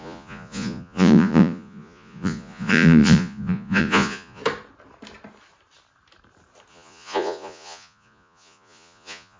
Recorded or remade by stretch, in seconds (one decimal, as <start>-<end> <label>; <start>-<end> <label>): 0.0-4.4 remade; 4.4-6.7 recorded; 6.7-9.4 remade